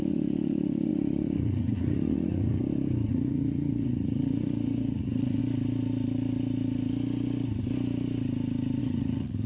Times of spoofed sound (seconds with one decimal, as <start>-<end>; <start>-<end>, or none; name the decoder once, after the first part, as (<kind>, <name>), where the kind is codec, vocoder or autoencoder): 0.0-2.6 (vocoder, Vocos); 3.1-5.4; 8.8-9.5